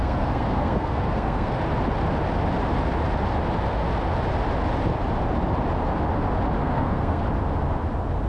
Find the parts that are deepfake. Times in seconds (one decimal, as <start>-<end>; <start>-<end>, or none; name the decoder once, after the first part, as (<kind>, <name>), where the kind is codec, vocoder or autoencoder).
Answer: 0.0-1.6 (codec, SNAC); 6.6-7.2